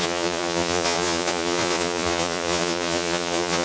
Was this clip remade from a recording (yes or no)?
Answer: yes